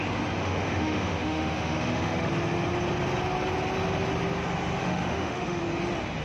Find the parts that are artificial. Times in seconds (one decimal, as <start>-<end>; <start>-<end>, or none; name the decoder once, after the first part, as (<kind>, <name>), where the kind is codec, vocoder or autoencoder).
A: 0.4-2.3 (autoencoder, DAC-VAE); 4.8-5.6